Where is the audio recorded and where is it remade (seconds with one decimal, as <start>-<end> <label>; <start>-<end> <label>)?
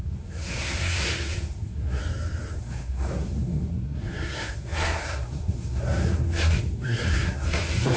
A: 0.0-2.0 remade; 2.0-2.6 recorded; 2.6-8.0 remade